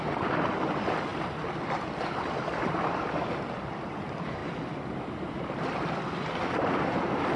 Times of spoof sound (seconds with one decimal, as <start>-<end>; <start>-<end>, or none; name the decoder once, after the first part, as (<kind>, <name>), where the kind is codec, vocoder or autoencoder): 0.0-4.4 (vocoder, BigVGAN v2)